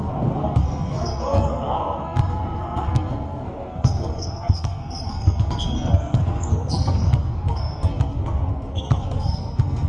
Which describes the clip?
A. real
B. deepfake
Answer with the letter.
B